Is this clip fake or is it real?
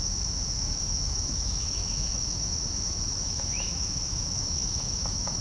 fake